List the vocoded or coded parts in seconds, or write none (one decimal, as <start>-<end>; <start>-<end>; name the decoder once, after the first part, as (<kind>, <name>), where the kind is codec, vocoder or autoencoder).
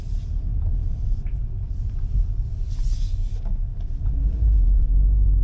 0.5-2.7 (vocoder, BigVGAN v2); 3.7-4.8